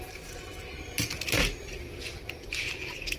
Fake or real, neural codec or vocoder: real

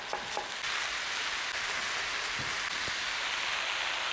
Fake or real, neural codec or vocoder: real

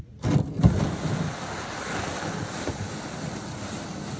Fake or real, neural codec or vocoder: real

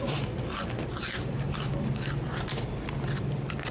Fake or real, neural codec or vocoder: fake, vocoder, BigVGAN v2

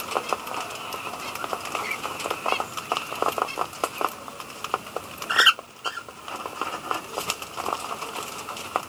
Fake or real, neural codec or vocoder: fake, vocoder, BigVGAN v2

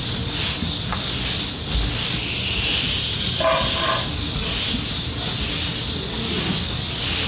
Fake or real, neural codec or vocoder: real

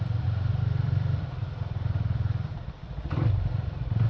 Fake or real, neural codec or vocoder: fake, vocoder, BigVGAN v2